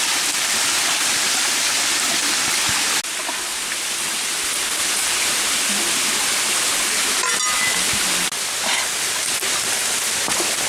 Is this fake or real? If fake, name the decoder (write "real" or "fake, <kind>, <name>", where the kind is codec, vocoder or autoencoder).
real